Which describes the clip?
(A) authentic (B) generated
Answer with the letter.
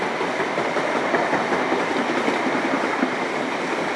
A